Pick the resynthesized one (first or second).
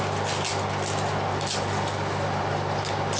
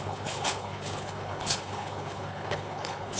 second